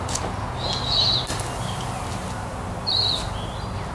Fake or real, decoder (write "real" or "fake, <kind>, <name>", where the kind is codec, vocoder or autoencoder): real